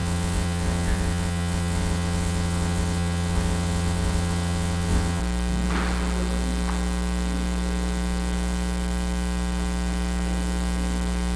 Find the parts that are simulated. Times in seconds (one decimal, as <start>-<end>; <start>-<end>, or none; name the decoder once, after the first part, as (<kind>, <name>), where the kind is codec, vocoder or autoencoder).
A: 0.0-5.2 (vocoder, WaveNeXt)